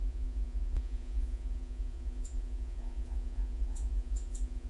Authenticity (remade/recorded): remade